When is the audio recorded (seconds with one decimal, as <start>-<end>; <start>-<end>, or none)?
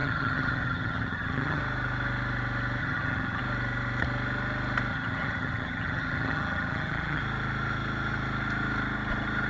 1.6-2.8; 3.4-4.9; 7.2-9.5